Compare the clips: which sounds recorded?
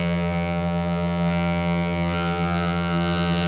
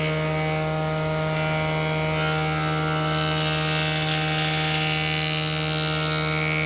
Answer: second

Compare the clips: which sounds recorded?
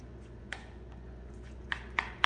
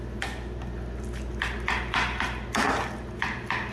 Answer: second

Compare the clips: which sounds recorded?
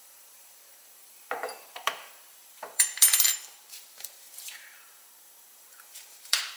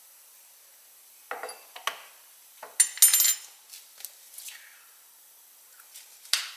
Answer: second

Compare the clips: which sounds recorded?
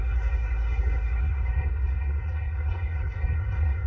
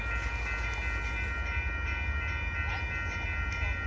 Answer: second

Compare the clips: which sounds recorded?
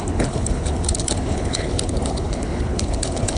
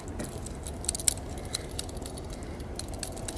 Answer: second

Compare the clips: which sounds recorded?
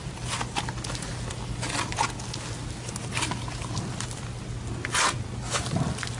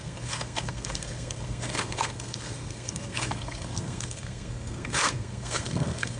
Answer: first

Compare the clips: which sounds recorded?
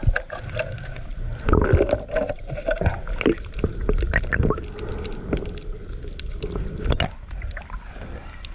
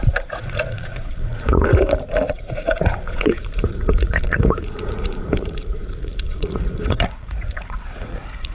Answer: first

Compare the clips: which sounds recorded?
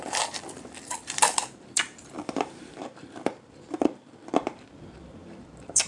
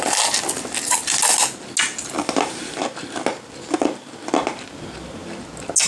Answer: second